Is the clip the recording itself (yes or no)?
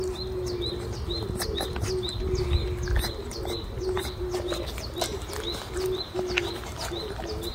yes